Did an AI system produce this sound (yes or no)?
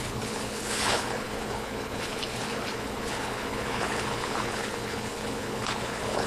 yes